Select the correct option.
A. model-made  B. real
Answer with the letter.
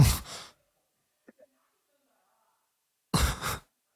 B